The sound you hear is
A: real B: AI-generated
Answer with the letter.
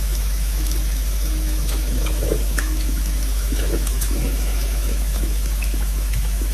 B